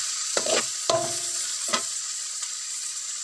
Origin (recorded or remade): remade